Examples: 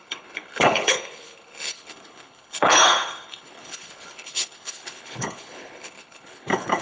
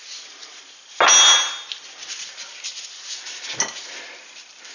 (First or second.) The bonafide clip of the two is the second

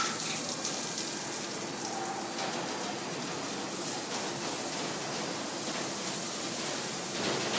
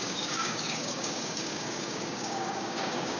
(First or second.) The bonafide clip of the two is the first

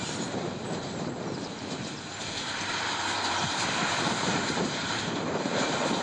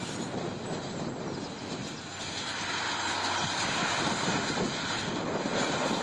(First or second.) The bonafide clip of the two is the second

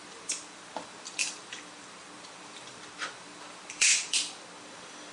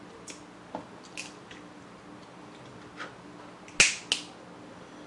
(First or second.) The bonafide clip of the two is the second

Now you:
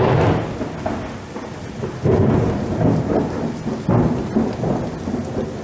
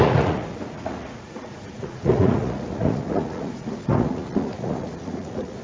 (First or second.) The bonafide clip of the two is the first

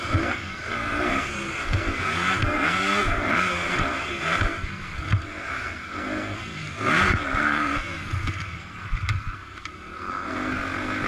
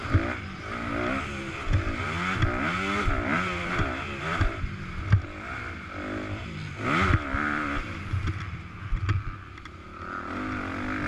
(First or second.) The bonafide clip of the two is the second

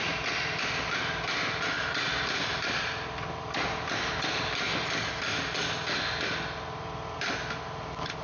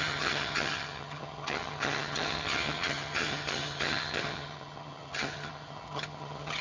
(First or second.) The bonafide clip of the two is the first